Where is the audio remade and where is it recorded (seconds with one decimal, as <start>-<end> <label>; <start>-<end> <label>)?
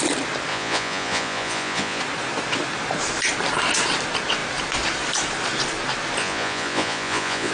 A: 0.0-0.5 recorded; 0.5-2.0 remade; 2.0-6.2 recorded; 6.2-7.5 remade